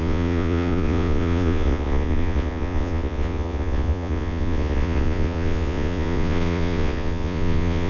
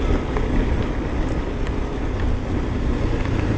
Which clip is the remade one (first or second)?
first